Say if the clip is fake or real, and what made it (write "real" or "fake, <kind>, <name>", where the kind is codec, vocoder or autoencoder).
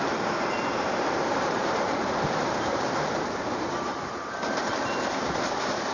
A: fake, vocoder, BigVGAN v2